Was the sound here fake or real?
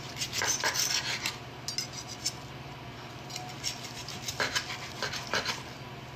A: real